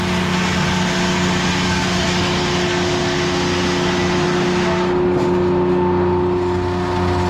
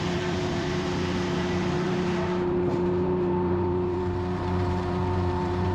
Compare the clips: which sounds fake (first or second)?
second